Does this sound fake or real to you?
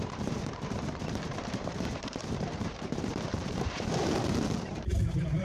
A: fake